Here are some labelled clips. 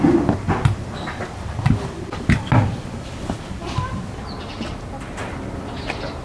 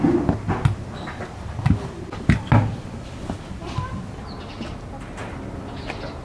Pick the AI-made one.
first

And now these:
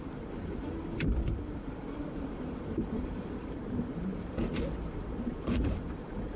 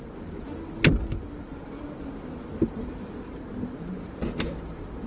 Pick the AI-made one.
first